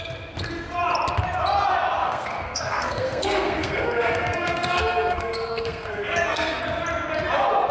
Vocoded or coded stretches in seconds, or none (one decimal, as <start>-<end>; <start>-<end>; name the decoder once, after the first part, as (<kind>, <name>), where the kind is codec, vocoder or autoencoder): 2.0-6.6 (codec, SNAC)